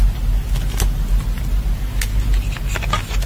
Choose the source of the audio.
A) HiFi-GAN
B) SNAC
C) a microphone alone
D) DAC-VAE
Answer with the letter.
C